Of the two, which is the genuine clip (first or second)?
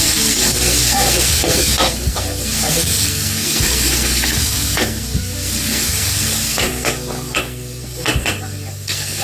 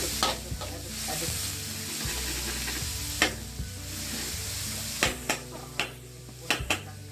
second